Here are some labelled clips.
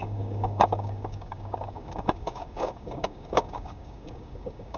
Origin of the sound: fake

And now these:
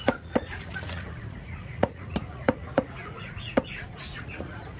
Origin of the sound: fake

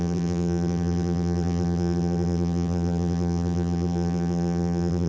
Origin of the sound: fake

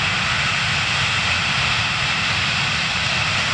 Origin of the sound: real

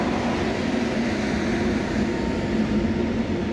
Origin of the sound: real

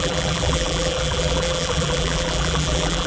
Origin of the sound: fake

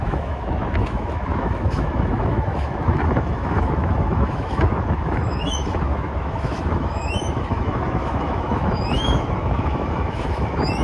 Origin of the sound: fake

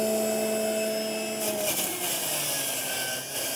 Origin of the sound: real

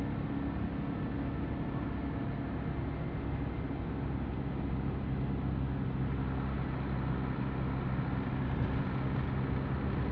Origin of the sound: real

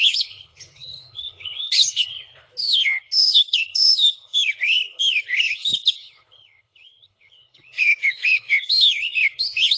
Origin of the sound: fake